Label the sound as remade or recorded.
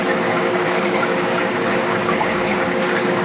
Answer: remade